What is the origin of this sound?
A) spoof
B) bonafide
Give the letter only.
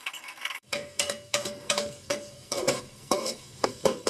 A